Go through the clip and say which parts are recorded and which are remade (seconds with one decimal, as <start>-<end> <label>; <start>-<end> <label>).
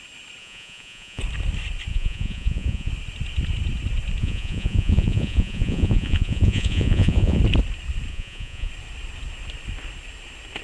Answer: 0.0-0.4 recorded; 0.4-1.2 remade; 1.2-1.9 recorded; 1.9-2.9 remade; 2.9-4.2 recorded; 4.2-7.4 remade; 7.4-8.1 recorded; 8.1-8.7 remade; 8.7-10.6 recorded